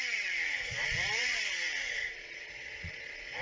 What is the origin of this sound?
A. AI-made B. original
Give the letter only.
A